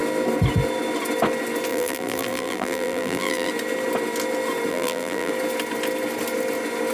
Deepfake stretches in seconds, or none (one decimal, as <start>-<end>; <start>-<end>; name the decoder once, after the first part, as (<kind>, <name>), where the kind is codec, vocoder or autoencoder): 1.7-3.5 (vocoder, BigVGAN v2); 4.7-5.3